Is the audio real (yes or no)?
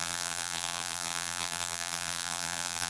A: no